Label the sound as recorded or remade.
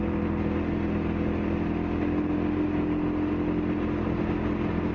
recorded